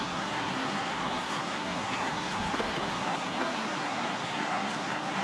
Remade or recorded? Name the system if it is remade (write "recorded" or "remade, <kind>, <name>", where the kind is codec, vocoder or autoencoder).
remade, codec, SNAC